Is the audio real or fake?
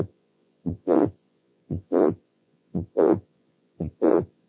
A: fake